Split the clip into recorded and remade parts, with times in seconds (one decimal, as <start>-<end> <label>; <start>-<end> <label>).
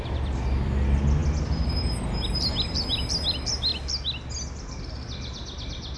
0.0-6.0 recorded